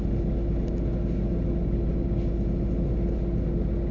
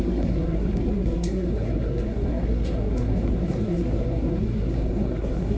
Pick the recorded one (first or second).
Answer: first